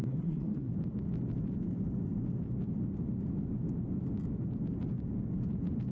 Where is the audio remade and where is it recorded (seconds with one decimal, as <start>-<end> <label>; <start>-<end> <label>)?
0.0-0.7 remade; 0.7-5.9 recorded